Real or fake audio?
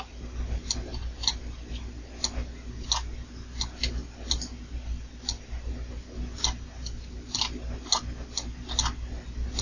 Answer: real